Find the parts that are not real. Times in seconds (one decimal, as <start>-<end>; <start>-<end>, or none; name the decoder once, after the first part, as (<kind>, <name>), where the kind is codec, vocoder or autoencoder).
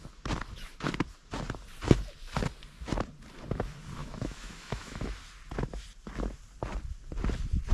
4.0-5.0 (autoencoder, DAC-VAE)